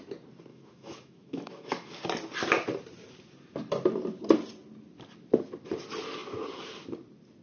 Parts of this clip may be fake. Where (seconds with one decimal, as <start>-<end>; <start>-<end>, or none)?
0.5-1.9